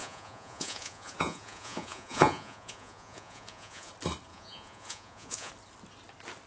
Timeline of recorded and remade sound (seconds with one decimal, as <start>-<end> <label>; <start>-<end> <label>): 0.0-3.9 remade; 3.9-4.3 recorded; 4.3-5.5 remade; 5.5-6.5 recorded